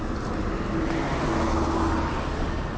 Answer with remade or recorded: recorded